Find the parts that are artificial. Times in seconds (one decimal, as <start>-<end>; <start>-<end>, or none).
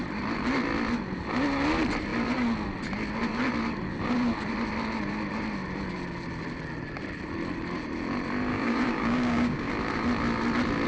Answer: 8.5-9.7